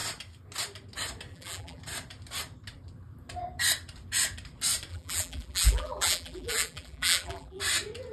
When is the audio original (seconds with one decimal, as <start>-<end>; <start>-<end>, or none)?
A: 0.0-1.3; 1.8-4.9; 7.6-8.1